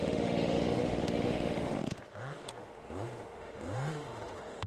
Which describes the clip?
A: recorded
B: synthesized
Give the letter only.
B